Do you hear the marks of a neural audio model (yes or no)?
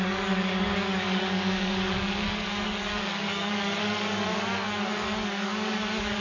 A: yes